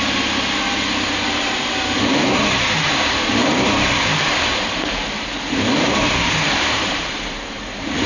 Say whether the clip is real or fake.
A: fake